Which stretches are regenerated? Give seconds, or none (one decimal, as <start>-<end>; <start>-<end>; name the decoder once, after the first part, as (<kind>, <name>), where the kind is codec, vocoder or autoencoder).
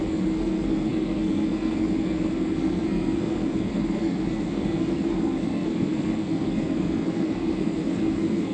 0.0-8.5 (codec, SNAC)